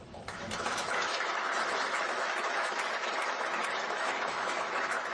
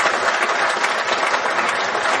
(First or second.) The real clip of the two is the second